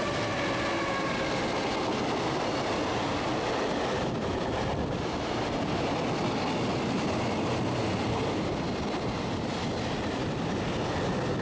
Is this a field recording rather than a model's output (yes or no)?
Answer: yes